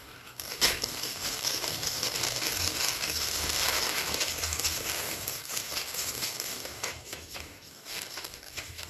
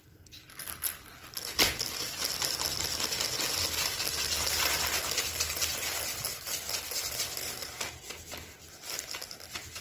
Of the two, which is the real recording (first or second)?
second